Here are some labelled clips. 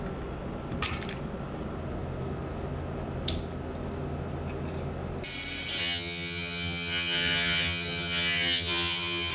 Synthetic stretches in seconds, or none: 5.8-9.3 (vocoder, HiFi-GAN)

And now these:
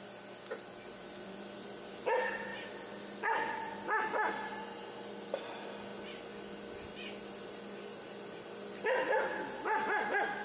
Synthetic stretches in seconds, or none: none

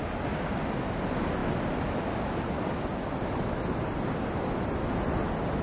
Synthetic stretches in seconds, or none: none

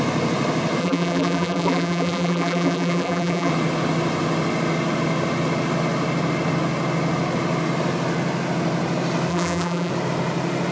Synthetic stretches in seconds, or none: 0.8-3.5 (vocoder, BigVGAN v2); 9.3-9.9

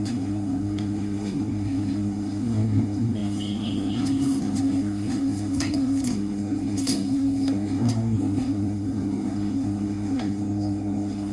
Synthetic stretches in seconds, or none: 0.0-11.3 (codec, SNAC)

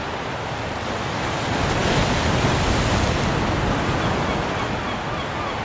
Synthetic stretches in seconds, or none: none